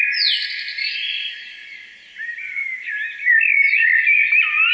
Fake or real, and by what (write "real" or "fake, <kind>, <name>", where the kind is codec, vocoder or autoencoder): fake, vocoder, BigVGAN v2